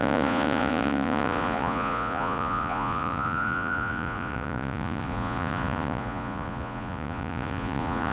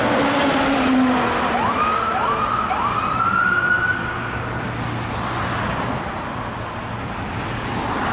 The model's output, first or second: first